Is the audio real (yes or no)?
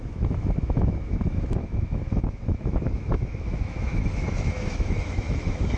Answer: no